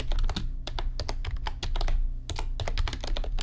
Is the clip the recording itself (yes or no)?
yes